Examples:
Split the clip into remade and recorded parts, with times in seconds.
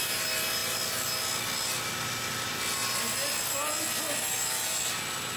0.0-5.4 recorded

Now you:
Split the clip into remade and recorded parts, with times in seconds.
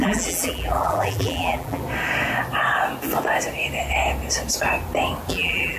0.0-1.8 remade; 1.8-5.3 recorded; 5.3-5.8 remade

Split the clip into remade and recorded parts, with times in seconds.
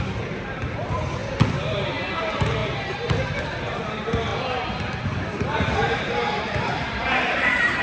0.0-1.2 remade; 1.2-2.2 recorded; 2.2-2.6 remade; 2.6-3.4 recorded; 3.4-4.3 remade; 4.3-5.4 recorded; 5.4-7.8 remade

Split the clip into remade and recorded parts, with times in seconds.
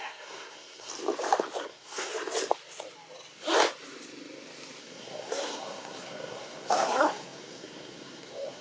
0.0-0.9 remade; 0.9-1.6 recorded; 1.6-2.1 remade; 2.1-4.8 recorded; 4.8-8.6 remade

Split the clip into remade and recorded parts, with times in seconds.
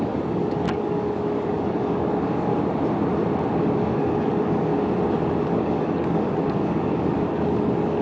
0.0-2.5 remade; 2.5-3.6 recorded; 3.6-4.7 remade; 4.7-5.4 recorded; 5.4-8.0 remade